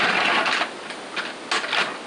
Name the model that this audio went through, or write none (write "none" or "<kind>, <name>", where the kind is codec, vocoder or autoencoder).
none